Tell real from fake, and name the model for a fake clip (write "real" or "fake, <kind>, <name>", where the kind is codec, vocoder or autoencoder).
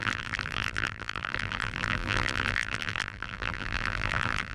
fake, vocoder, BigVGAN v2